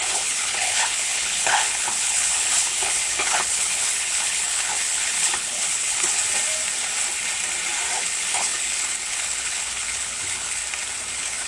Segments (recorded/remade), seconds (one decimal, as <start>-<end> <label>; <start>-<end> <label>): 0.0-6.2 remade; 6.2-8.0 recorded; 8.0-10.6 remade; 10.6-11.1 recorded; 11.1-11.5 remade